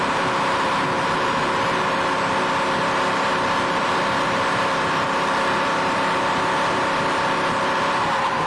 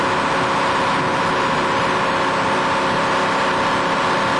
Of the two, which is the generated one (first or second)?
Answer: first